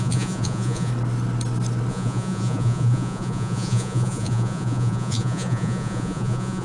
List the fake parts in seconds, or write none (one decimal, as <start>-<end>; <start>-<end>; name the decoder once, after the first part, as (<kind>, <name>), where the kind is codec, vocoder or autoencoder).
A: 0.0-0.9 (vocoder, Vocos); 1.9-6.6